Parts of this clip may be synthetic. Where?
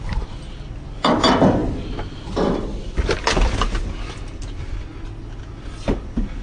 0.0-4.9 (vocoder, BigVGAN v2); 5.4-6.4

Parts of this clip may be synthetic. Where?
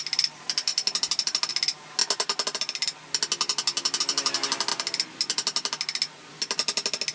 none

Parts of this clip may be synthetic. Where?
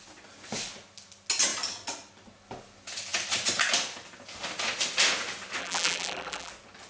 5.6-6.5 (vocoder, BigVGAN v2)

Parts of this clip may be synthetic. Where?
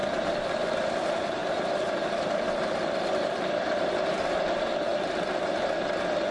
1.4-3.9 (vocoder, BigVGAN v2); 4.9-5.5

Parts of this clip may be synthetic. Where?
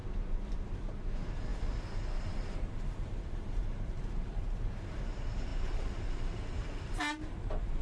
1.5-5.1 (vocoder, BigVGAN v2); 5.5-6.9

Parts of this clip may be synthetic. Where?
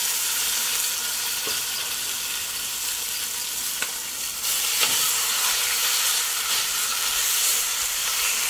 6.9-8.5 (vocoder, BigVGAN v2)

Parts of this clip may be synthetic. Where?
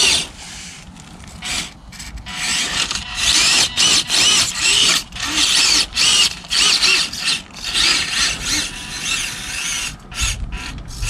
2.5-5.6 (vocoder, BigVGAN v2)